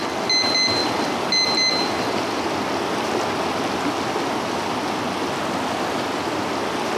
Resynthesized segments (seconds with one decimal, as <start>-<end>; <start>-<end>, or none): none